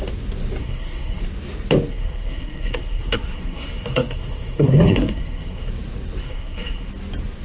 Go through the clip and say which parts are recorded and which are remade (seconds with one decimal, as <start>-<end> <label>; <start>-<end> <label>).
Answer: 0.0-0.6 recorded; 0.6-1.2 remade; 1.2-1.9 recorded; 1.9-5.7 remade; 5.7-6.2 recorded; 6.2-6.9 remade; 6.9-7.4 recorded